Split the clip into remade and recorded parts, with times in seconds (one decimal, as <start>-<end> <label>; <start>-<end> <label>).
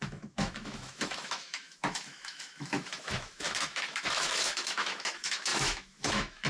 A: 0.0-6.5 remade